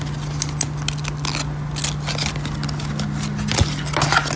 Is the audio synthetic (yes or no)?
no